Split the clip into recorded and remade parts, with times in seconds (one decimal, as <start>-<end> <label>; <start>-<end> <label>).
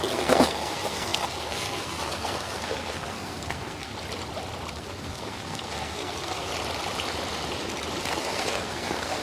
0.0-3.9 remade; 3.9-4.7 recorded; 4.7-6.5 remade; 6.5-8.0 recorded; 8.0-9.2 remade